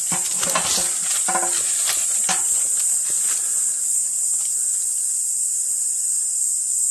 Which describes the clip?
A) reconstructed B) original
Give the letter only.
B